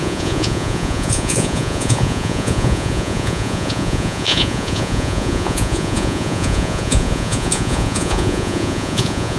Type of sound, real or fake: fake